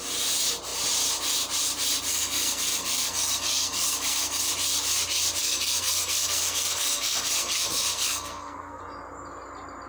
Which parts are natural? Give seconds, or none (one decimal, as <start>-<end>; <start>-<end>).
0.0-2.1; 4.4-5.4; 8.8-9.9